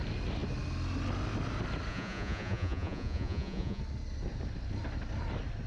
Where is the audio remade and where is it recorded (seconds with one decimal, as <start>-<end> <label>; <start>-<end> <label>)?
0.0-1.9 recorded; 1.9-3.8 remade; 3.8-5.7 recorded